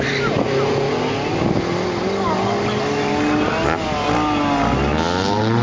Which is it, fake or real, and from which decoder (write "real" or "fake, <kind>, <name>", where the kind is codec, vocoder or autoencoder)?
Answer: real